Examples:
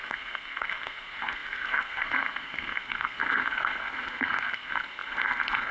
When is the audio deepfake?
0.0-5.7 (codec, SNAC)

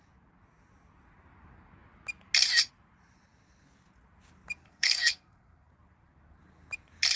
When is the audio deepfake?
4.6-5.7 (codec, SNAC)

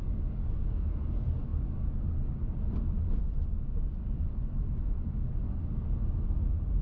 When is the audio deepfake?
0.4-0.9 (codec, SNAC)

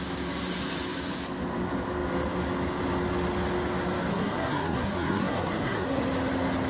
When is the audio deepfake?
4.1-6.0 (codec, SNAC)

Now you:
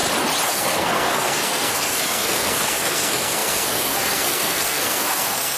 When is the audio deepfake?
0.5-5.6 (codec, SNAC)

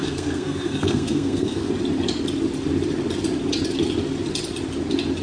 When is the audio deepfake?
0.0-1.7 (codec, SNAC)

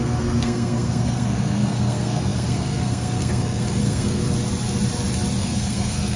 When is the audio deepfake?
0.0-4.2 (codec, SNAC); 5.4-6.2

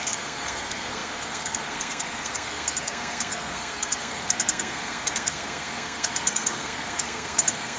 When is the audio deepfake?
0.0-7.8 (codec, SNAC)